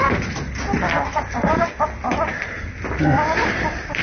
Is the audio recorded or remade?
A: recorded